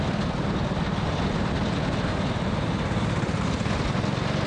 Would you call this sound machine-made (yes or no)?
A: no